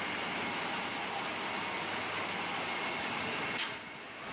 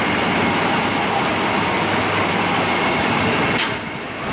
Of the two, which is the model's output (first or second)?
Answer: second